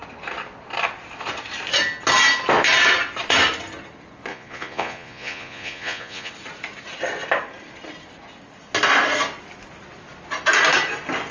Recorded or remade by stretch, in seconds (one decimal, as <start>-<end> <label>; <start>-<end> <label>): 0.0-4.3 recorded; 4.3-6.3 remade; 6.3-11.3 recorded

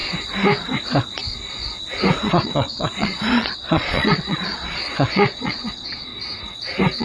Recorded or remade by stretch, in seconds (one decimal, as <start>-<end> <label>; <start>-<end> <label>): 0.0-2.2 recorded; 2.2-6.1 remade; 6.1-7.0 recorded

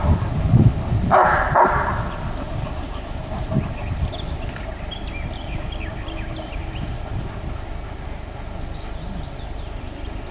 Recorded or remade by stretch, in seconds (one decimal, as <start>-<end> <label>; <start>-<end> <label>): 0.0-10.3 recorded

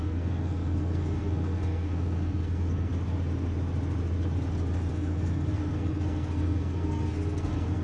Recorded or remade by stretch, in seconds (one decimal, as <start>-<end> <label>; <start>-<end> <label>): 0.0-2.9 remade; 2.9-4.9 recorded; 4.9-7.8 remade